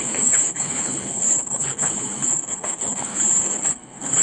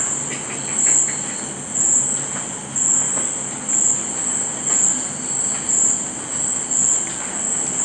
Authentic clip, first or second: second